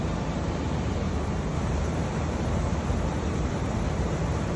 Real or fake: fake